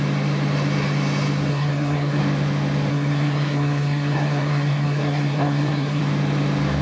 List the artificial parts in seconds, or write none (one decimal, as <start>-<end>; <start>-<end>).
1.5-2.2; 2.9-6.0